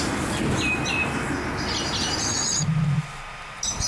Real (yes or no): yes